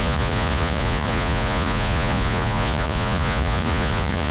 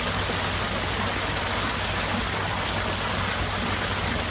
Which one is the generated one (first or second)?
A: first